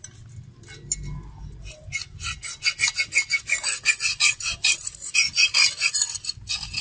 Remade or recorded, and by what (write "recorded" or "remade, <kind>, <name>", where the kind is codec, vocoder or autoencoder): recorded